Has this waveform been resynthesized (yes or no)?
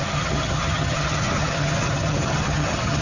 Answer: yes